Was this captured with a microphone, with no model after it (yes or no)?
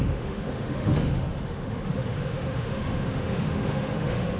no